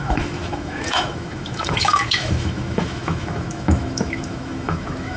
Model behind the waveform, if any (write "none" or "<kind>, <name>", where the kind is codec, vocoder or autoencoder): autoencoder, DAC-VAE